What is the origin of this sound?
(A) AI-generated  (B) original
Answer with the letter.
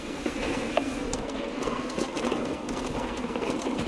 A